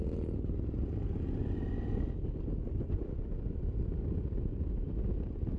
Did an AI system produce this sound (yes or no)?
no